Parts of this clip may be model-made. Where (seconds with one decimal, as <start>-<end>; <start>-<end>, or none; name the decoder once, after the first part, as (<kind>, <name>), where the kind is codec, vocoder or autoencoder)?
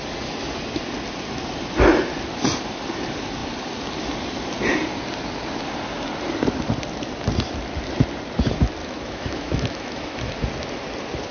8.8-10.4 (autoencoder, DAC-VAE)